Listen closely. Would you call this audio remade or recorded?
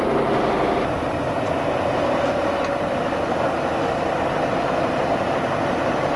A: recorded